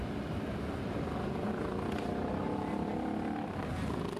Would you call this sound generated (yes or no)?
no